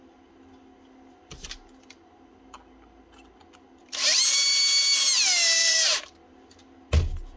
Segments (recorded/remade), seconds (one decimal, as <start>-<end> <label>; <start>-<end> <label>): 0.0-3.8 recorded; 3.8-5.0 remade; 5.0-5.7 recorded; 5.7-6.2 remade; 6.2-7.4 recorded